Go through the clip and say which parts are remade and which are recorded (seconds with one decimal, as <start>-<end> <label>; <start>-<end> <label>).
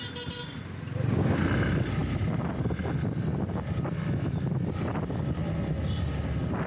0.0-6.7 recorded